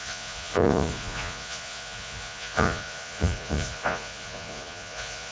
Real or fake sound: fake